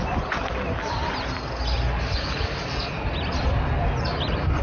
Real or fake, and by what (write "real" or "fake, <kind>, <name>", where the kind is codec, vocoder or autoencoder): real